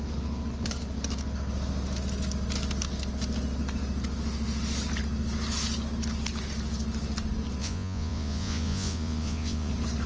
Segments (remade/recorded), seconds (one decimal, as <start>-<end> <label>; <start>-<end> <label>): 0.0-7.6 recorded; 7.6-9.7 remade; 9.7-10.1 recorded